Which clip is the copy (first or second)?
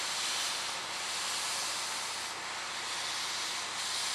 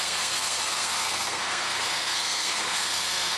second